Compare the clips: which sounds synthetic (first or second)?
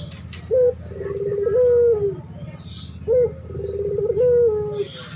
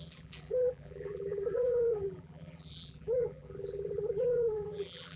second